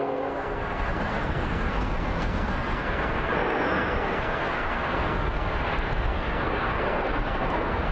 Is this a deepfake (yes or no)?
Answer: yes